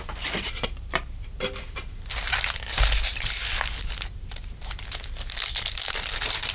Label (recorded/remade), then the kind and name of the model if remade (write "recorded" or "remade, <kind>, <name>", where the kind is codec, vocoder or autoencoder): recorded